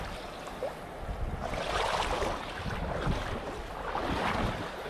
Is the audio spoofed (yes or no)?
no